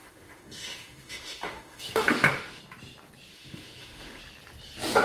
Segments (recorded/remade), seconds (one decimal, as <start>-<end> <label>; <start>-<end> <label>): 0.0-2.6 remade; 2.6-3.3 recorded; 3.3-4.2 remade; 4.2-5.0 recorded